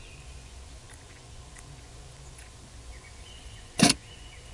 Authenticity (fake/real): fake